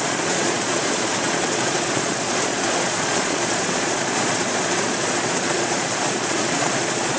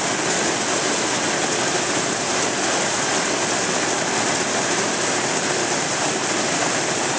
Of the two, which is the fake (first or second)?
first